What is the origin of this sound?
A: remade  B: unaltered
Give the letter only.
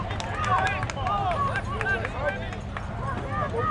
B